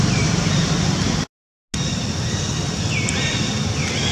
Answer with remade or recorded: recorded